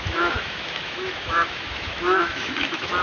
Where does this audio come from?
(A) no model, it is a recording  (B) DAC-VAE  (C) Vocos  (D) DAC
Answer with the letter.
B